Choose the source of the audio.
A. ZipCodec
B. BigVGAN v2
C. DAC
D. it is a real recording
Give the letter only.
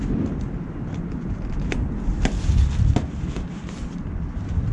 D